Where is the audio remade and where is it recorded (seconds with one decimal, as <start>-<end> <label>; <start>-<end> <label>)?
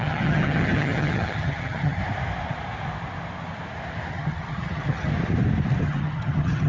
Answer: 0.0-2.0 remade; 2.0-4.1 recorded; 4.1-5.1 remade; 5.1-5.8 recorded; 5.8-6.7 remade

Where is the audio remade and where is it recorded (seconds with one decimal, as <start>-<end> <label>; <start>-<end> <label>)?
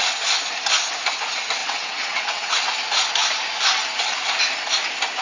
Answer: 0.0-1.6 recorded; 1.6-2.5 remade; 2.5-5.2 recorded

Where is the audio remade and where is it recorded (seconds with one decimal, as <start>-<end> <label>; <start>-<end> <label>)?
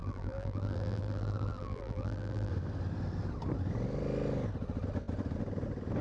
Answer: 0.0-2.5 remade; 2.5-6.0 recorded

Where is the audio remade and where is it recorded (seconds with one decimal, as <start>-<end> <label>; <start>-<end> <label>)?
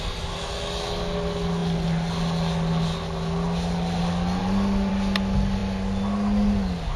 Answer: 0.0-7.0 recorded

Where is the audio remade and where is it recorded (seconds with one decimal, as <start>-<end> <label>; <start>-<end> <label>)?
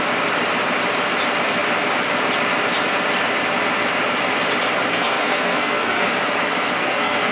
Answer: 0.0-4.9 recorded; 4.9-6.1 remade; 6.1-6.8 recorded; 6.8-7.3 remade